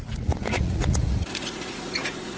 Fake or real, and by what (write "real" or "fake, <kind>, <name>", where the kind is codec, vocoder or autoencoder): fake, vocoder, Vocos